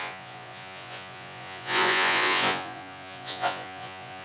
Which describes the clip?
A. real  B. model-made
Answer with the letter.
B